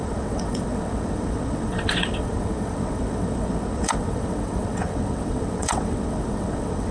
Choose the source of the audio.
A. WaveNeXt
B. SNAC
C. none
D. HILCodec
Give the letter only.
A